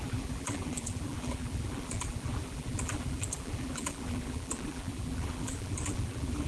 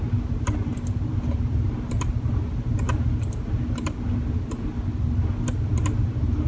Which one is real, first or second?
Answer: second